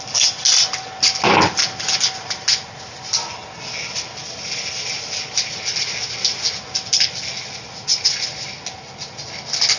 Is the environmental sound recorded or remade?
recorded